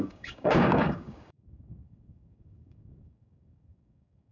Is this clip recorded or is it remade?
remade